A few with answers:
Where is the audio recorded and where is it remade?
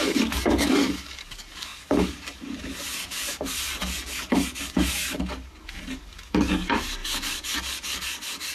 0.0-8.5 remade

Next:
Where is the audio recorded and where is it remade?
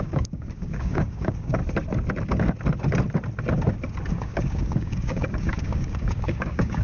0.0-1.6 remade; 1.6-4.1 recorded; 4.1-6.8 remade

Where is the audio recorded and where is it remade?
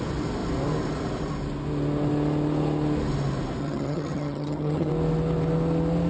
0.0-3.6 recorded; 3.6-4.9 remade; 4.9-6.1 recorded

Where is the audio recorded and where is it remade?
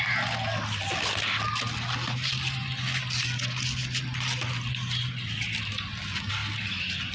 0.0-7.1 recorded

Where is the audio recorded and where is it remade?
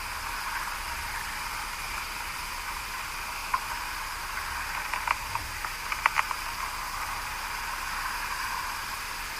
0.0-3.4 remade; 3.4-8.2 recorded; 8.2-9.4 remade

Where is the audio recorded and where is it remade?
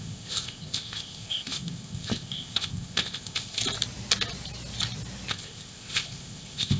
0.0-3.6 remade; 3.6-5.3 recorded; 5.3-6.8 remade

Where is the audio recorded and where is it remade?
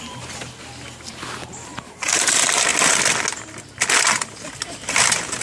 0.0-1.7 recorded; 1.7-2.3 remade; 2.3-5.4 recorded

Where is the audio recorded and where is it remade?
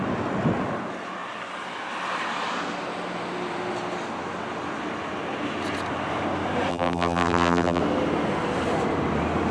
0.0-6.7 recorded; 6.7-7.8 remade; 7.8-9.5 recorded